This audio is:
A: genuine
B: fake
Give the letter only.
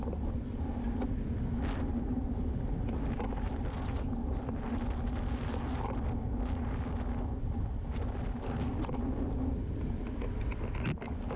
A